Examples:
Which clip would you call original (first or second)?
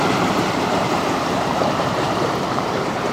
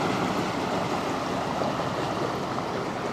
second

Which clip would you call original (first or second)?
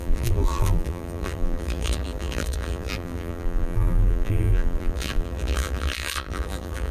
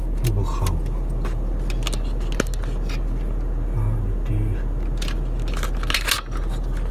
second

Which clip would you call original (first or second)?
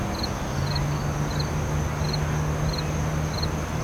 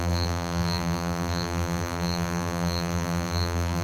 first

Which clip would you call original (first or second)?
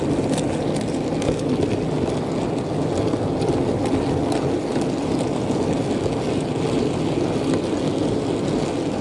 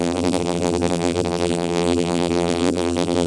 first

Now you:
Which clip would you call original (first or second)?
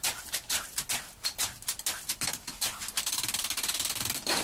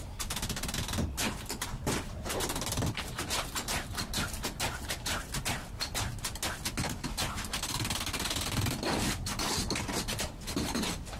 second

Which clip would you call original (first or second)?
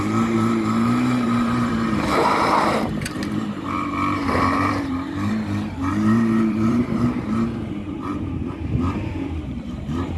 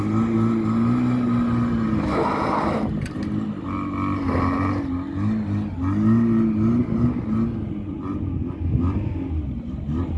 second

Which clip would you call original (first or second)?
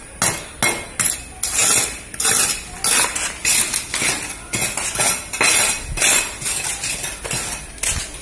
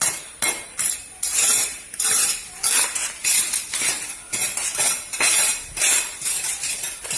first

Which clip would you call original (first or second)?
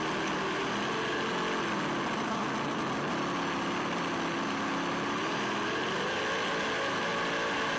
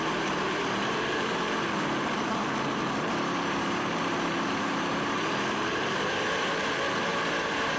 first